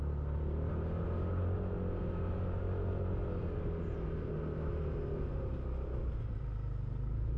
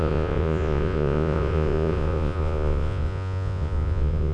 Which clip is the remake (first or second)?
second